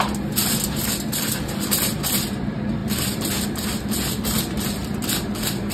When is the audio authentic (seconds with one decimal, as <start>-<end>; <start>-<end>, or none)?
0.0-5.7